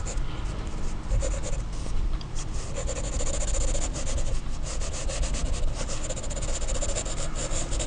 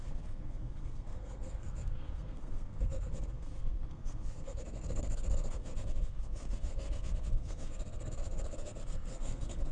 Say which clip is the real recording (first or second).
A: first